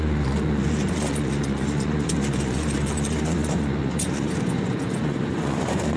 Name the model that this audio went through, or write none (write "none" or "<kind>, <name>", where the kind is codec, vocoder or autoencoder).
vocoder, Vocos